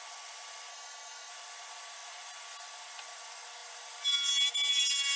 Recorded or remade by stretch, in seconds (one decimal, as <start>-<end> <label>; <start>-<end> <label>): 0.0-0.7 recorded; 0.7-1.3 remade; 1.3-5.2 recorded